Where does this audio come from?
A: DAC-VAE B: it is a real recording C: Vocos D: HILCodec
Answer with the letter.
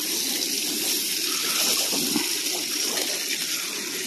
B